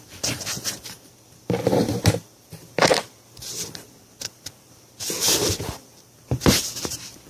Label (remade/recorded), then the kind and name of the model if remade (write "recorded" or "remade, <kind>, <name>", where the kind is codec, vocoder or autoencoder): remade, vocoder, BigVGAN v2